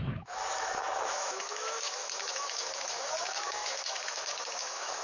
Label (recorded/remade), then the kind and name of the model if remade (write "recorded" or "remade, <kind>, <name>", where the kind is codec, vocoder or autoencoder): remade, autoencoder, DAC-VAE